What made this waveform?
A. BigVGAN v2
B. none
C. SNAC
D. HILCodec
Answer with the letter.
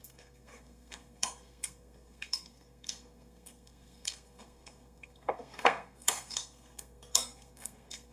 C